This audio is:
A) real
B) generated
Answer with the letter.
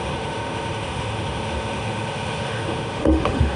B